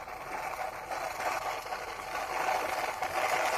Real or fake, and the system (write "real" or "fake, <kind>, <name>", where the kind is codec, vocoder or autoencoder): real